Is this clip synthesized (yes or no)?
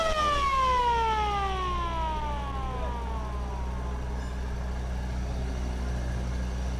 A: no